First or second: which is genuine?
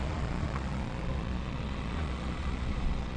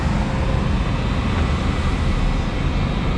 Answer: second